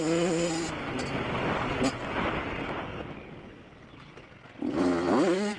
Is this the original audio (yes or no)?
yes